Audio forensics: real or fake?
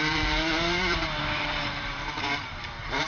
fake